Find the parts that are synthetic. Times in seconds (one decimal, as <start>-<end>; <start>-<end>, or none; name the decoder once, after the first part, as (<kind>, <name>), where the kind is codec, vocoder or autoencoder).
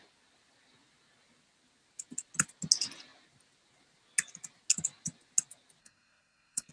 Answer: 5.8-6.7 (codec, SNAC)